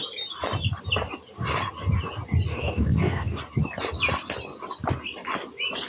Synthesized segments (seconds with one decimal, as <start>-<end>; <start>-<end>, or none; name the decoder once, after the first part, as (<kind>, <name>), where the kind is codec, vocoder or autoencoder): 2.5-3.4 (codec, DAC)

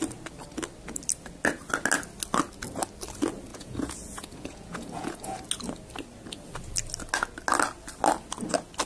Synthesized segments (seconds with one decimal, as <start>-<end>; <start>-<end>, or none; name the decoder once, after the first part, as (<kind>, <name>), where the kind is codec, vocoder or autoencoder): 3.5-5.4 (vocoder, Vocos)

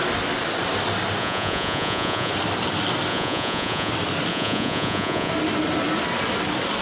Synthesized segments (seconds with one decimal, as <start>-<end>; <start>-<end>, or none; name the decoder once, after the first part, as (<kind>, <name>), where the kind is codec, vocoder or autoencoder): 1.2-2.3 (vocoder, Vocos); 3.1-3.9; 4.3-5.3

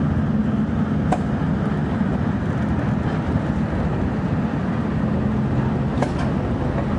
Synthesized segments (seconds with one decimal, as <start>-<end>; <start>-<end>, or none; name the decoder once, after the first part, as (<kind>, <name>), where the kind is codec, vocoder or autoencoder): none

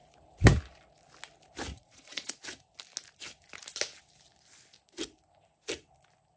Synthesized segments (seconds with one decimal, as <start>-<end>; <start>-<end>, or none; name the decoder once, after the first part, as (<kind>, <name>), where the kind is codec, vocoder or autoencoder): 1.7-2.3 (vocoder, Vocos)

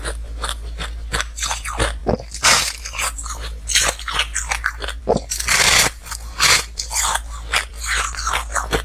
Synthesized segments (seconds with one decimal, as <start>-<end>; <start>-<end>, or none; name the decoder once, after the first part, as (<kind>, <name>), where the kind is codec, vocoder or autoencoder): none

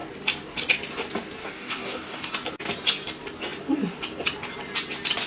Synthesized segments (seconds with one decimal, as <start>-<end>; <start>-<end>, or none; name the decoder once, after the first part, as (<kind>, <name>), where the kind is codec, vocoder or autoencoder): 1.4-2.3 (codec, DAC)

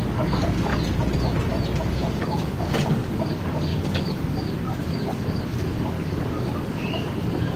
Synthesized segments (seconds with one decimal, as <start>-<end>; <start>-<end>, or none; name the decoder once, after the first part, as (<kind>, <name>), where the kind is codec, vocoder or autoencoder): 0.0-0.7 (codec, DAC); 1.8-7.6